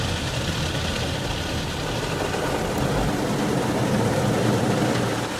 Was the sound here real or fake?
real